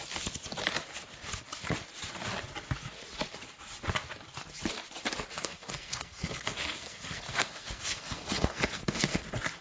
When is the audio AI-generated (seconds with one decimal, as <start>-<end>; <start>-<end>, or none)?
5.3-9.2